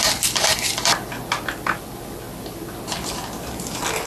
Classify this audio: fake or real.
real